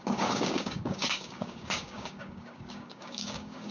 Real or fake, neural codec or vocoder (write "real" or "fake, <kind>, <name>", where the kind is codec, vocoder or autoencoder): fake, codec, DAC